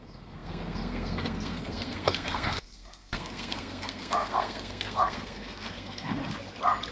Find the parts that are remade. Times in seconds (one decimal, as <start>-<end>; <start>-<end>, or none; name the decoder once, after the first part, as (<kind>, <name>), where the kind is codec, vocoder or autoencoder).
0.0-6.2 (codec, SNAC)